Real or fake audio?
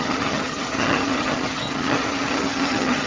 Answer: fake